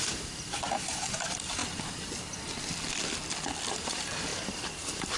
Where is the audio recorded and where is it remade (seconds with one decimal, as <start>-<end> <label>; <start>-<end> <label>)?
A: 0.0-1.6 remade; 1.6-3.7 recorded; 3.7-5.2 remade